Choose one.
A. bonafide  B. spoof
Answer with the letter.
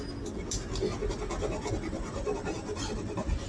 A